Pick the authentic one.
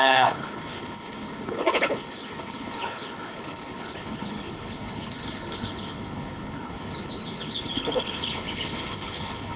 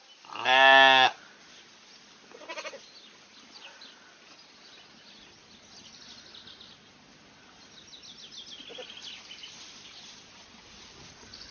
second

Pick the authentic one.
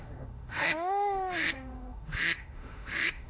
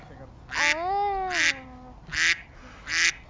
second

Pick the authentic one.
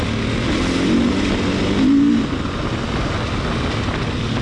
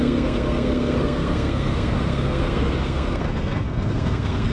first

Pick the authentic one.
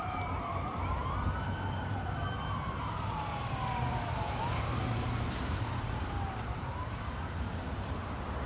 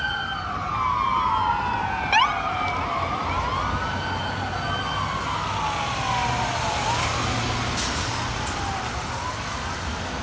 second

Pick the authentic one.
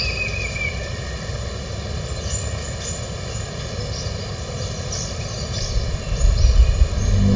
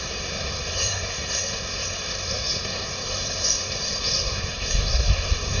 first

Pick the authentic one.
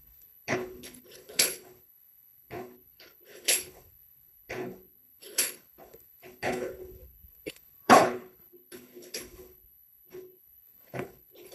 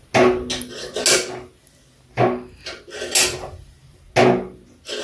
second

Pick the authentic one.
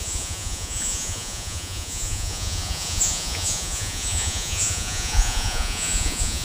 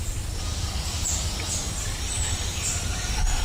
second